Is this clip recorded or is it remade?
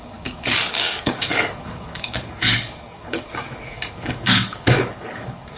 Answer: remade